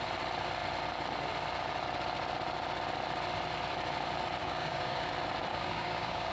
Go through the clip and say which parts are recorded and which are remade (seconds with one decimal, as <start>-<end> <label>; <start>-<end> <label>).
0.0-4.4 recorded; 4.4-5.1 remade; 5.1-5.5 recorded; 5.5-6.3 remade